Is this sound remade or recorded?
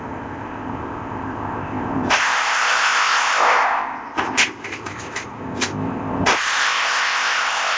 remade